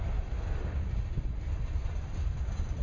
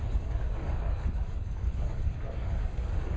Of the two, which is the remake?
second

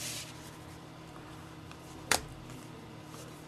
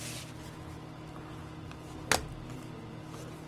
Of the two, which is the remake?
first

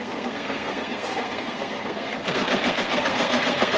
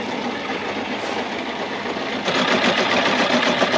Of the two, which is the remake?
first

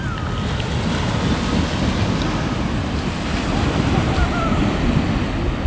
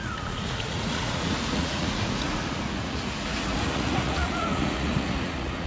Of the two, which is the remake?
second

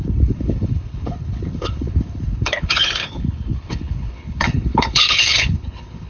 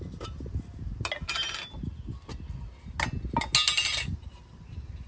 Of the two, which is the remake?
first